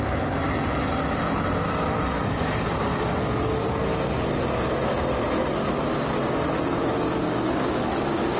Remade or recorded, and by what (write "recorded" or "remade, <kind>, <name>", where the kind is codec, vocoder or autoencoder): recorded